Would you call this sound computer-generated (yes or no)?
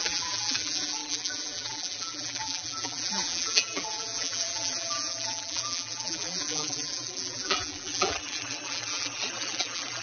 yes